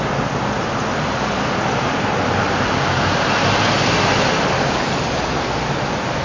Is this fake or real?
real